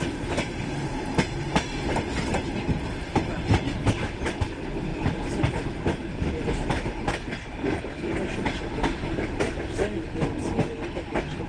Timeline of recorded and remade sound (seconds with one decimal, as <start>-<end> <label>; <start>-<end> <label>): 0.0-11.5 recorded